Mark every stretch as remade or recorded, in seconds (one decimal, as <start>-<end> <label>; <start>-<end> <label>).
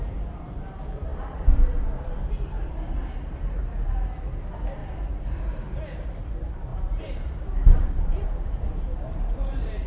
0.0-9.9 remade